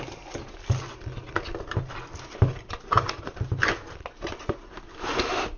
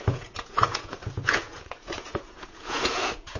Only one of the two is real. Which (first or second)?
first